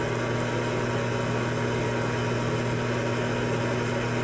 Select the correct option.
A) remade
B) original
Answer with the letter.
B